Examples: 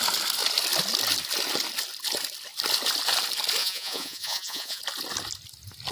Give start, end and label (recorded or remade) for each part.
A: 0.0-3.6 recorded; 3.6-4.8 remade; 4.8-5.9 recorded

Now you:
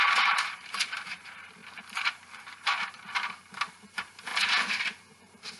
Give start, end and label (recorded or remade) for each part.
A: 0.0-1.6 remade; 1.6-2.4 recorded; 2.4-4.3 remade; 4.3-5.1 recorded; 5.1-5.6 remade

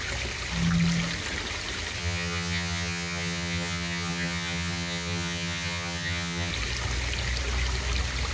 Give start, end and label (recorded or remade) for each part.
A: 0.0-2.0 recorded; 2.0-6.5 remade; 6.5-8.3 recorded

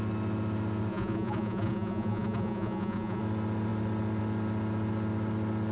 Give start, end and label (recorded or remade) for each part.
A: 0.0-0.9 recorded; 0.9-3.2 remade; 3.2-5.7 recorded

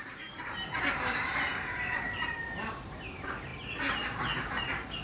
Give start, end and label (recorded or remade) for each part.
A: 0.0-3.5 remade; 3.5-5.0 recorded

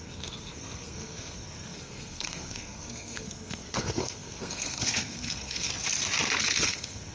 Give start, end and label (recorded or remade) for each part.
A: 0.0-5.7 remade; 5.7-6.4 recorded; 6.4-7.1 remade

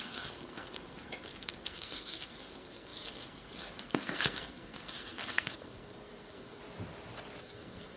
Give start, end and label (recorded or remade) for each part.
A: 0.0-6.6 remade; 6.6-7.4 recorded; 7.4-8.0 remade